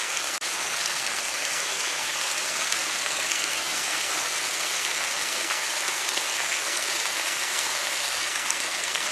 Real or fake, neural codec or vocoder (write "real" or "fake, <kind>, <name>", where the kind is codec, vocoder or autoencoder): fake, codec, SNAC